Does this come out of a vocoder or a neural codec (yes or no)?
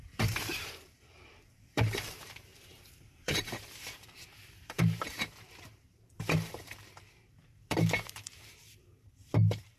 yes